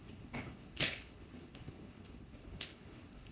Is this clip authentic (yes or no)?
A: no